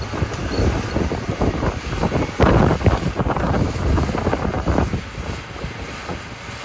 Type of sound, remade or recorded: recorded